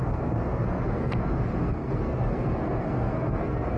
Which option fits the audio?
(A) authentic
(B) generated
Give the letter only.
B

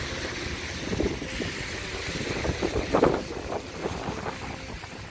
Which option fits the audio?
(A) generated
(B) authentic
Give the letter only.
B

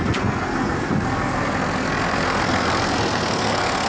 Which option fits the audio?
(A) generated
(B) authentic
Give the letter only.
A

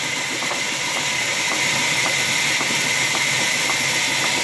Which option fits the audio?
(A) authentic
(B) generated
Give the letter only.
A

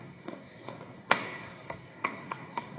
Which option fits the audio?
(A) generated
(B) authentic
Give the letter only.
A